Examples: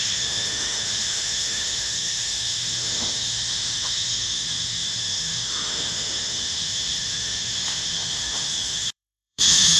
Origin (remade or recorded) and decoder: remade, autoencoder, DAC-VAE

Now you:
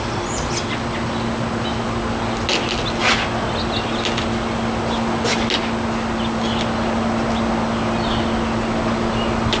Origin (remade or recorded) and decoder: recorded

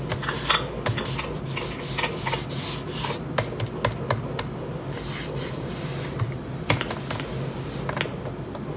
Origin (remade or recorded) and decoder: recorded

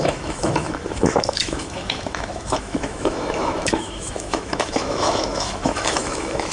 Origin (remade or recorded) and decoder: remade, autoencoder, DAC-VAE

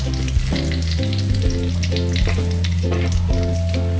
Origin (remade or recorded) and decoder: recorded